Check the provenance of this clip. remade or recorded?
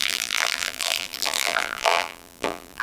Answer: remade